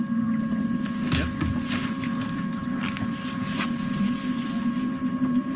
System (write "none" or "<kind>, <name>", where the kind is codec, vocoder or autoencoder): none